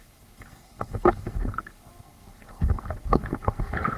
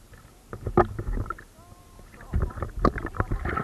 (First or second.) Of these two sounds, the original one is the second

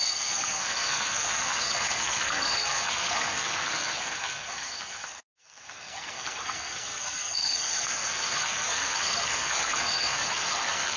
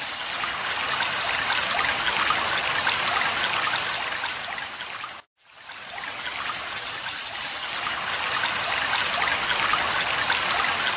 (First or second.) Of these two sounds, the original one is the second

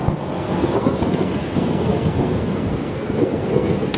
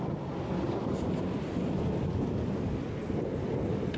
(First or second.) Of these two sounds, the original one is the second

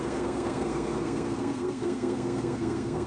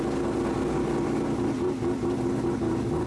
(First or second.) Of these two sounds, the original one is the second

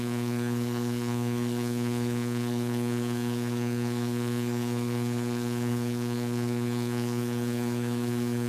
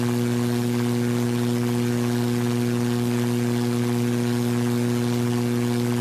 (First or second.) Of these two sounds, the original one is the second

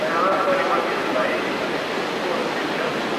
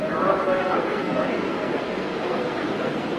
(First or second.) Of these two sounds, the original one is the first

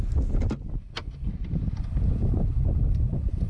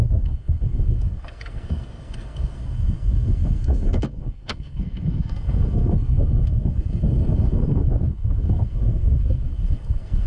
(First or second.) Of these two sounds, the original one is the first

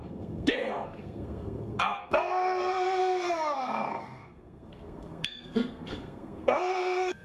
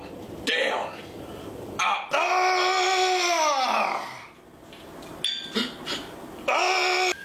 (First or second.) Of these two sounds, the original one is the second